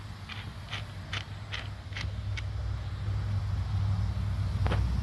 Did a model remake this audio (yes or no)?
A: no